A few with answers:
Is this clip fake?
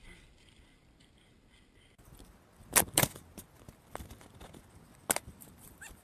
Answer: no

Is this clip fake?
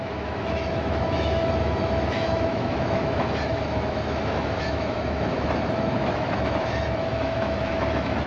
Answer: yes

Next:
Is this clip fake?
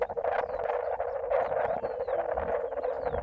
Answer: no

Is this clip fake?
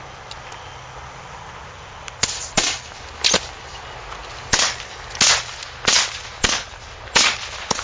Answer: no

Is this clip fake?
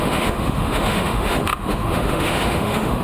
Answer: yes